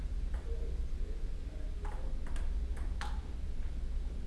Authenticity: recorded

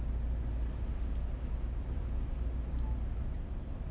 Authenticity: recorded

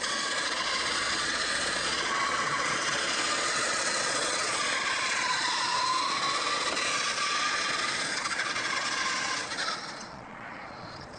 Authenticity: remade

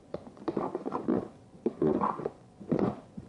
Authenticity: remade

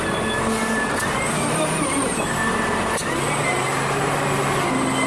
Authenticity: recorded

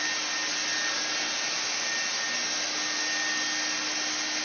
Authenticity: recorded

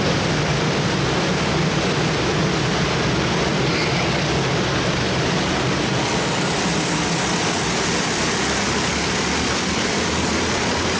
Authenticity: recorded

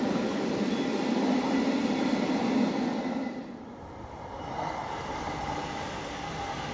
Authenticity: recorded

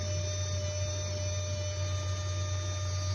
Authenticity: recorded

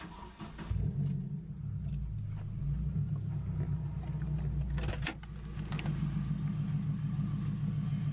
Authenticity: recorded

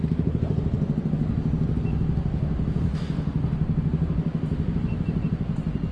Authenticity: recorded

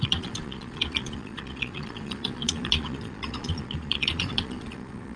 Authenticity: remade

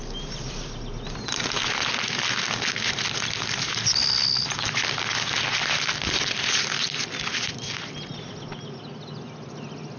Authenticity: recorded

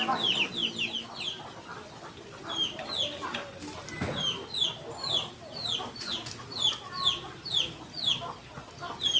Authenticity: recorded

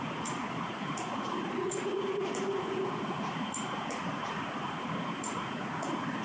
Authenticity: remade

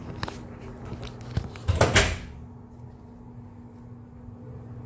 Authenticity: recorded